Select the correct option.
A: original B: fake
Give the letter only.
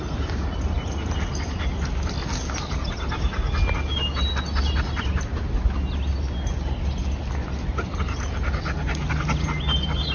A